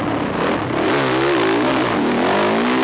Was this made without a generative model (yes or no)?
yes